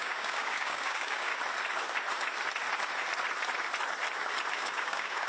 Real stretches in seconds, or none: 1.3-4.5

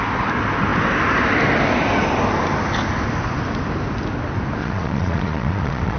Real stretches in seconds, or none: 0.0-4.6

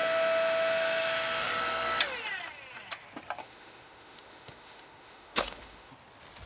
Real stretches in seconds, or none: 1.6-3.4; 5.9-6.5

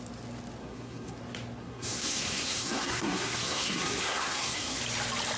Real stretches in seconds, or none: 0.0-0.6; 1.2-1.6; 4.8-5.4

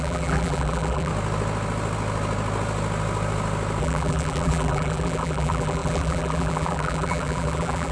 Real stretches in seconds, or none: 1.1-3.8

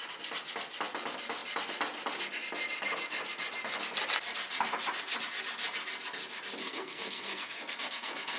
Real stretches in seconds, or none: 0.0-6.6